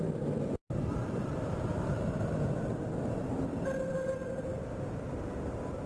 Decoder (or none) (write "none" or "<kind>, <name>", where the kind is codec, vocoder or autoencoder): none